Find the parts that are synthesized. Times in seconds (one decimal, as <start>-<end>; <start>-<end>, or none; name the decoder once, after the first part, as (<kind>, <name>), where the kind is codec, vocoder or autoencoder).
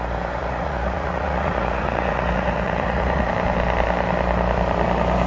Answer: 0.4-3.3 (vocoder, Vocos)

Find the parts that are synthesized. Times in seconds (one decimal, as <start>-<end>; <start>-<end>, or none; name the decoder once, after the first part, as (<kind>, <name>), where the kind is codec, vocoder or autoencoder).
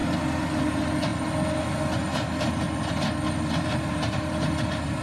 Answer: 0.6-1.1 (vocoder, BigVGAN v2); 3.6-5.0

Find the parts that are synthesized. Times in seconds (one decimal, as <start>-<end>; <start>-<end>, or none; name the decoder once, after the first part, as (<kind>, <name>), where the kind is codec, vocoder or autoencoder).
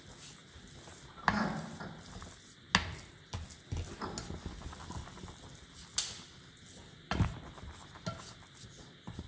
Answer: none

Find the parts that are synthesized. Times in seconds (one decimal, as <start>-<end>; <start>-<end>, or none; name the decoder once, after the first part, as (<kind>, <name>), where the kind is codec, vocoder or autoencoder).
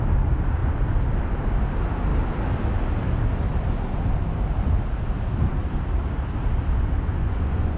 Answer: 7.1-7.8 (vocoder, Vocos)